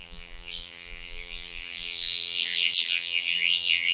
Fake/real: fake